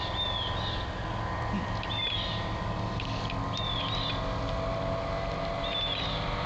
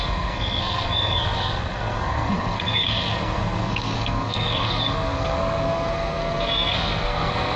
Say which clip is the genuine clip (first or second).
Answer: first